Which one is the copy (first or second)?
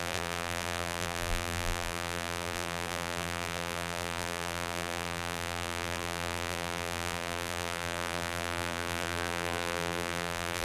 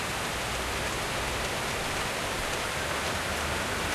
first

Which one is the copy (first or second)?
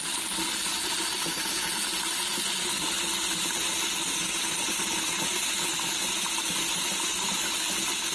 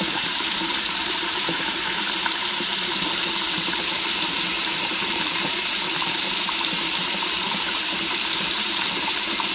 second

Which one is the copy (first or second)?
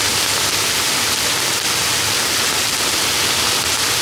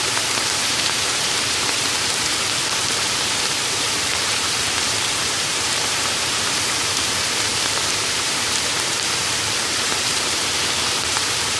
second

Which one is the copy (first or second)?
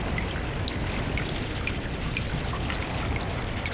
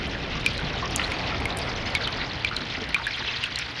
first